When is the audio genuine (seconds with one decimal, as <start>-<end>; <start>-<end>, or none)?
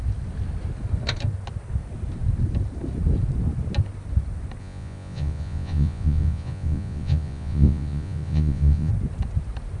0.0-4.6; 8.9-9.8